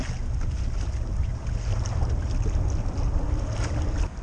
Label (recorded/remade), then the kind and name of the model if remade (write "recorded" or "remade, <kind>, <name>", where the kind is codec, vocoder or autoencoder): recorded